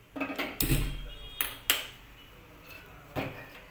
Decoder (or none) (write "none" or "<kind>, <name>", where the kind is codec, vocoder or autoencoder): none